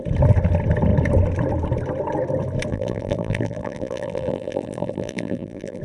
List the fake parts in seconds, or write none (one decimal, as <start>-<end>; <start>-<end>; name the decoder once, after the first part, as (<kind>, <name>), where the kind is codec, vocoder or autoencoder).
2.7-5.8 (vocoder, BigVGAN v2)